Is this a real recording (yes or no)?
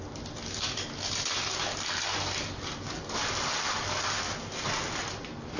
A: yes